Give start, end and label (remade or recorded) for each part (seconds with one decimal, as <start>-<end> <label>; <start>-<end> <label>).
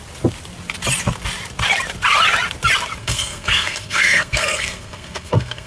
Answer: 0.0-3.0 recorded; 3.0-5.7 remade